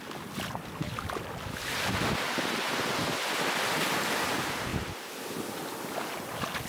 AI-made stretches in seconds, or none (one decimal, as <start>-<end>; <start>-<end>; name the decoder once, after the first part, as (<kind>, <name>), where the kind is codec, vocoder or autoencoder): none